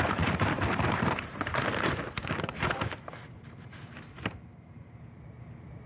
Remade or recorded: remade